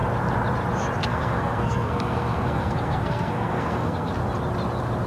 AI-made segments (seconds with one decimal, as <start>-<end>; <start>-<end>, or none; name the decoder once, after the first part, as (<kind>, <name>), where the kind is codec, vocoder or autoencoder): 1.0-4.1 (codec, SNAC)